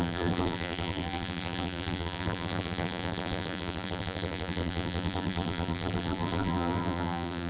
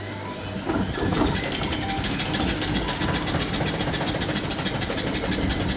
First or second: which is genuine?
second